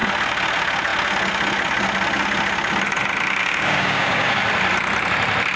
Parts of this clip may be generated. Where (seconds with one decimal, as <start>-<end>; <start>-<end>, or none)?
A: 3.4-4.4